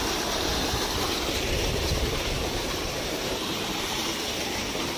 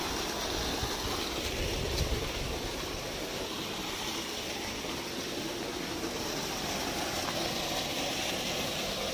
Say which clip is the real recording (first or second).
second